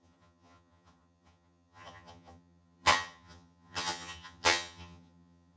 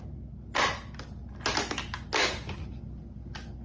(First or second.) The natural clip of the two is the second